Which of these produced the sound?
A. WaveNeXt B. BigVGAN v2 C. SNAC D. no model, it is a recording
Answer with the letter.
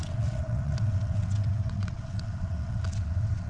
A